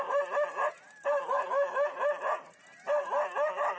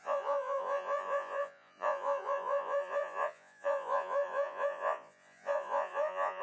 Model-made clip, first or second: second